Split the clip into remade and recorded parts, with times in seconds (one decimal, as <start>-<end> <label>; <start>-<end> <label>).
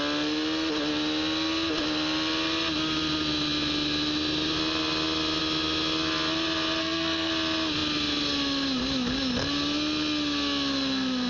0.0-6.8 recorded; 6.8-7.3 remade; 7.3-11.3 recorded